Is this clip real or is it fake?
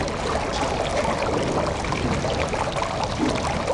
real